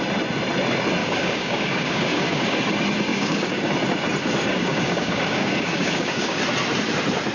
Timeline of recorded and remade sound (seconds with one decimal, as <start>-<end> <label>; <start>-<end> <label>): 0.0-1.0 recorded; 1.0-2.6 remade; 2.6-3.1 recorded; 3.1-3.7 remade; 3.7-4.5 recorded; 4.5-6.4 remade; 6.4-7.3 recorded